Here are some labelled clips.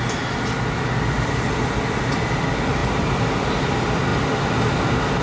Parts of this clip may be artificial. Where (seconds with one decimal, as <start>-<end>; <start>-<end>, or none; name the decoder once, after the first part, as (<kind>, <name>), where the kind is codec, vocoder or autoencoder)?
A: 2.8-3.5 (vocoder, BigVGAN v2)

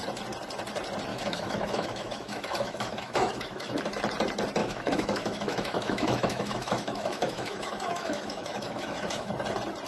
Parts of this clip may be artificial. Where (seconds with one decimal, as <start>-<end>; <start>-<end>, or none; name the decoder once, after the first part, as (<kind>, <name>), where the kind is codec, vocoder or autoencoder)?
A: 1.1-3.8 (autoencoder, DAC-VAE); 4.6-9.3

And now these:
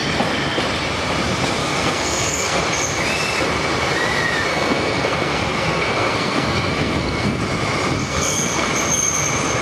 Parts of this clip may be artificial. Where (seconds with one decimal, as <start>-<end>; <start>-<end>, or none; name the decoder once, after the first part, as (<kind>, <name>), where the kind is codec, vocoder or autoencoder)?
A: 1.6-2.6 (codec, SNAC); 4.5-7.4; 8.0-8.7

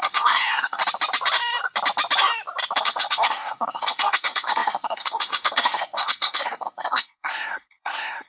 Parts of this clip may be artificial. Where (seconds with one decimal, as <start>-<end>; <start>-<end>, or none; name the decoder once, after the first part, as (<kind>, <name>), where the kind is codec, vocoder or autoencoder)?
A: 0.0-0.8 (codec, SNAC); 2.8-8.3

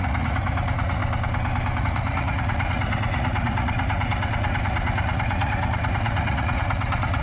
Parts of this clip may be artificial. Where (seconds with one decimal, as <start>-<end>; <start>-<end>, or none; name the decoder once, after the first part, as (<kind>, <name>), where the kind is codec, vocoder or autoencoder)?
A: 0.0-1.0 (vocoder, Vocos); 1.8-7.2

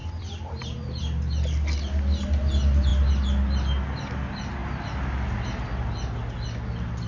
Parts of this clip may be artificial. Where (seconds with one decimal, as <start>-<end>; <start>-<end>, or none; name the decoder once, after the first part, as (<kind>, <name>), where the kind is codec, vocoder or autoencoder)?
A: none

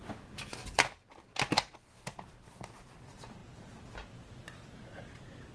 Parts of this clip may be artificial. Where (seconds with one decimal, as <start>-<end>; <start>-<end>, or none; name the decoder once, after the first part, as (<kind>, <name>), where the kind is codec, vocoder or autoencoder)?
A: none